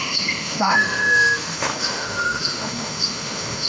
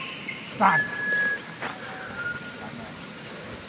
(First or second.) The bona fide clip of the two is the second